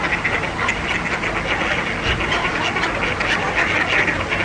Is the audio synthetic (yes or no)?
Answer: no